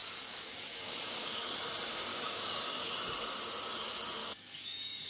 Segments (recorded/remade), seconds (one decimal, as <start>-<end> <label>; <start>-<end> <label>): 0.0-1.5 remade; 1.5-2.1 recorded; 2.1-2.8 remade; 2.8-4.2 recorded; 4.2-5.1 remade